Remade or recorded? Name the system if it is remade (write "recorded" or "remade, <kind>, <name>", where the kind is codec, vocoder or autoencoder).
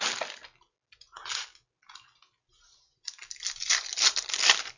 recorded